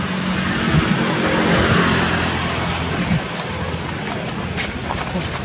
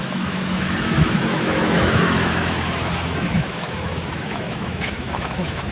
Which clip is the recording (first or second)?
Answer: first